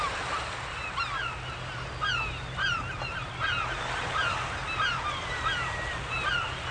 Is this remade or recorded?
recorded